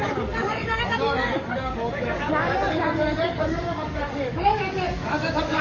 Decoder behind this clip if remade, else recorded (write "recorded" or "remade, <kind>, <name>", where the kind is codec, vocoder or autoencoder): remade, codec, DAC